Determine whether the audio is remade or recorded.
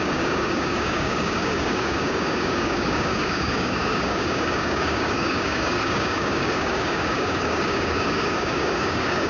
remade